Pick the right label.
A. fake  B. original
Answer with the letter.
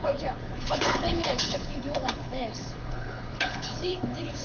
A